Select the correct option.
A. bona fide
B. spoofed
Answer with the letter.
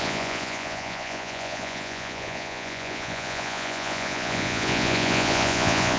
B